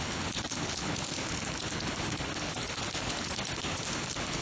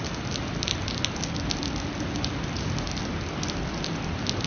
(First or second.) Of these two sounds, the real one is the second